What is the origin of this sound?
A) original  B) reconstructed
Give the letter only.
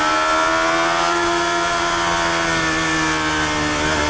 A